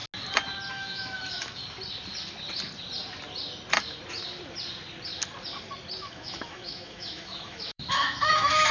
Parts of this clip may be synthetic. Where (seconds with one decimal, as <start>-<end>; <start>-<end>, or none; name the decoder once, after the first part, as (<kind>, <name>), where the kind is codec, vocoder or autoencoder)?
0.7-1.6 (autoencoder, DAC-VAE); 6.0-8.7